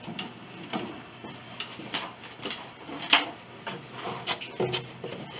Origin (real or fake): real